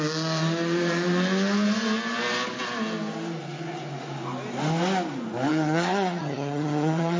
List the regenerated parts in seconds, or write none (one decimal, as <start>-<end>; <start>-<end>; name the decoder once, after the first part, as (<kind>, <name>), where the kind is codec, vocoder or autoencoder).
5.5-7.2 (vocoder, HiFi-GAN)